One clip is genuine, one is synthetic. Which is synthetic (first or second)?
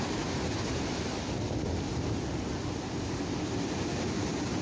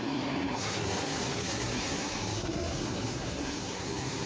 second